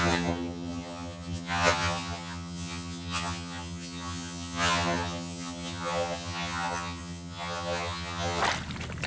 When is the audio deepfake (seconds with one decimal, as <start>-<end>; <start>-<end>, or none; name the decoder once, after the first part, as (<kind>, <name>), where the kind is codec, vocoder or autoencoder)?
0.0-8.4 (vocoder, HiFi-GAN)